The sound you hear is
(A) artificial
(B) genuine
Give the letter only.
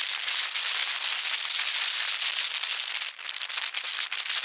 B